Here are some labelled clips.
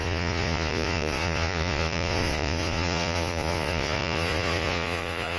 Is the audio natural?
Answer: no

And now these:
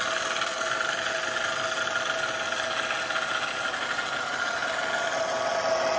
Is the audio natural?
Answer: yes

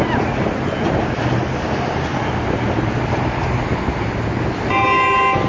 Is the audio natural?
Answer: yes